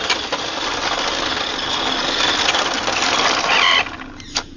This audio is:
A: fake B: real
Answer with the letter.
B